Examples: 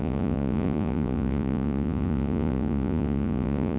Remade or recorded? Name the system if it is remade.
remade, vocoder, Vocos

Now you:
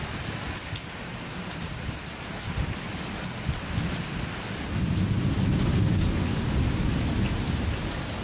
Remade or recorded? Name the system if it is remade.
recorded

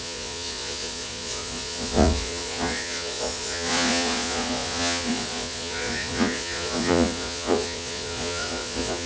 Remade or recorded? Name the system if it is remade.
remade, vocoder, Vocos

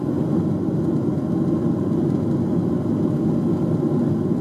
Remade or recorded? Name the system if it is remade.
recorded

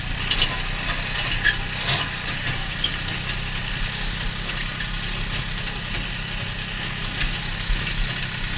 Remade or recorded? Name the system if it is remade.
recorded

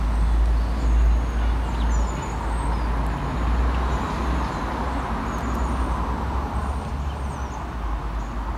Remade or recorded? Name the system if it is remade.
recorded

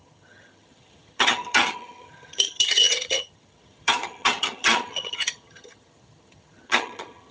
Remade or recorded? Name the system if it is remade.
remade, vocoder, HiFi-GAN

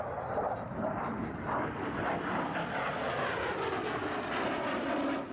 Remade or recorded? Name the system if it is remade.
recorded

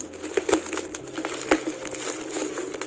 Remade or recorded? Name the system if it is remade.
recorded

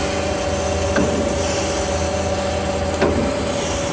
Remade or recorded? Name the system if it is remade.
recorded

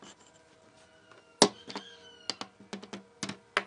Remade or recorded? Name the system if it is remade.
recorded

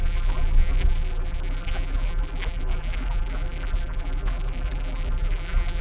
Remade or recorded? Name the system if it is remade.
remade, vocoder, BigVGAN v2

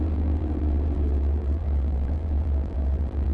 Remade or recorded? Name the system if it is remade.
remade, vocoder, BigVGAN v2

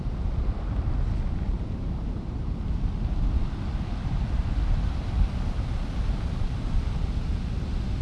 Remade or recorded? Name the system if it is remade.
recorded